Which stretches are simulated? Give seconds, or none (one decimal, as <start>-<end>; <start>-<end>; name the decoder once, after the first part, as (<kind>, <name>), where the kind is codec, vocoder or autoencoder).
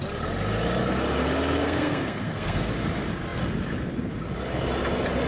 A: 1.6-2.7 (codec, SNAC)